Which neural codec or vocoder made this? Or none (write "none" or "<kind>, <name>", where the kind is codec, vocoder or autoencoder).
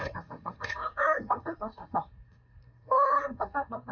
codec, SNAC